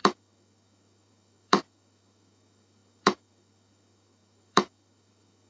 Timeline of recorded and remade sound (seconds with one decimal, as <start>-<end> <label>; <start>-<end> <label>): 0.0-5.5 remade